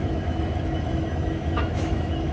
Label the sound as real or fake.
fake